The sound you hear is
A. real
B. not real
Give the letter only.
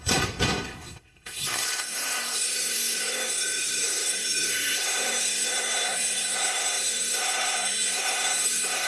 B